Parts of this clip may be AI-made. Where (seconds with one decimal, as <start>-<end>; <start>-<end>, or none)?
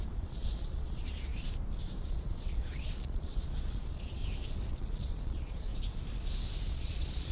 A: 0.0-1.3; 2.0-4.2; 4.7-5.7; 6.7-7.3